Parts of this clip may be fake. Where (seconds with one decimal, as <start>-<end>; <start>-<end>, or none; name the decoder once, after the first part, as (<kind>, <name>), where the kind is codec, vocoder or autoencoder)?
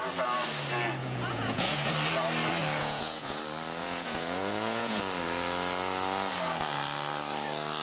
1.0-1.9 (vocoder, Vocos); 2.8-3.4; 3.8-5.0